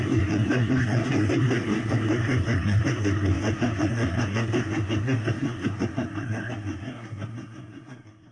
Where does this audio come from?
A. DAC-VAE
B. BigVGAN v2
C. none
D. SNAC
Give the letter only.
D